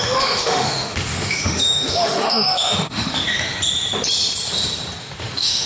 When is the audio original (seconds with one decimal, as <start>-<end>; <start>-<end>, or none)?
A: 3.6-5.0